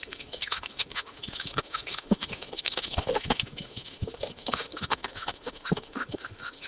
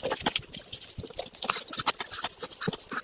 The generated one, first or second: first